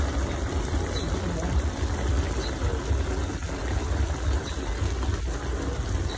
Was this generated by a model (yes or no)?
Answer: no